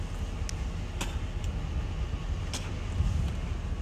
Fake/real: real